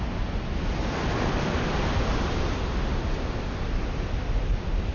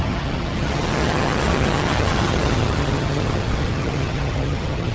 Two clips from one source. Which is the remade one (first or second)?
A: second